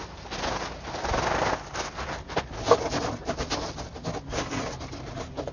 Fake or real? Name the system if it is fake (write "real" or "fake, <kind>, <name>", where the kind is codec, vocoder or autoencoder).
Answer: real